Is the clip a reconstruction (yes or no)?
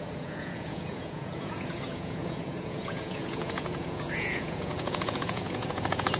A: yes